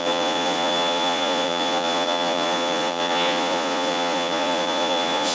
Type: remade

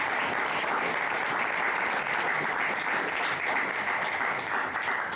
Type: recorded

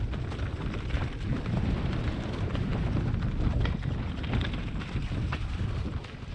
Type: recorded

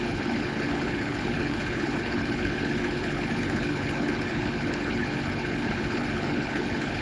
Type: remade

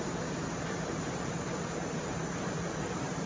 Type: remade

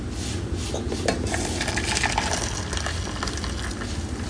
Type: recorded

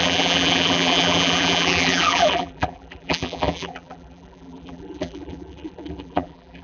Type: remade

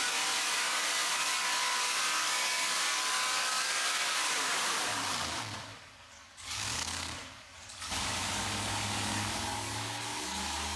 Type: remade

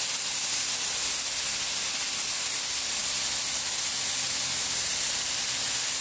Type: recorded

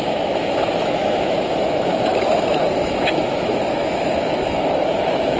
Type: remade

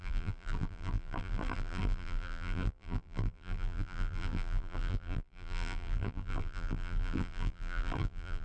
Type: remade